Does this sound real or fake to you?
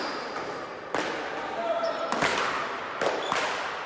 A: real